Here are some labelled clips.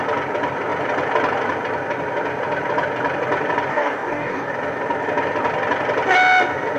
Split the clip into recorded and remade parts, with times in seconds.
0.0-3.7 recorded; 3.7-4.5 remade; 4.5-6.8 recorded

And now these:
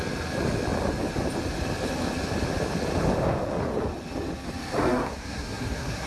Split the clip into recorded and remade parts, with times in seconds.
0.0-4.8 recorded; 4.8-6.1 remade